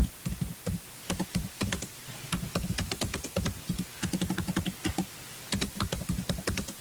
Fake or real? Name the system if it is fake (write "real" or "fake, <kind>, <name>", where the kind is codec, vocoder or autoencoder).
real